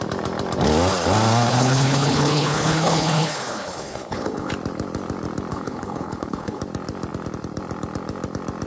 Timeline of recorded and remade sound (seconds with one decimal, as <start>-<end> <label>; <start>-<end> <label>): 0.0-1.5 recorded; 1.5-4.5 remade; 4.5-5.5 recorded; 5.5-6.6 remade; 6.6-8.7 recorded